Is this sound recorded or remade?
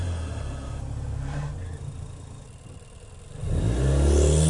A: recorded